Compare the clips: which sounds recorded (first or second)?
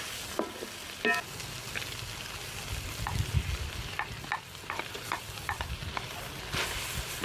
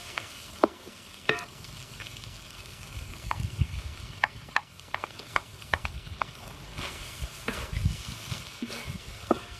first